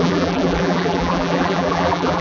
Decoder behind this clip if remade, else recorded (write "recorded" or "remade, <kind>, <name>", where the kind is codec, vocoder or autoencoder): remade, vocoder, BigVGAN v2